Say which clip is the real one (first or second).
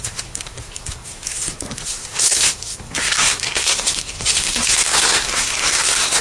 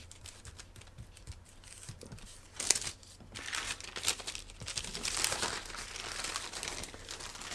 second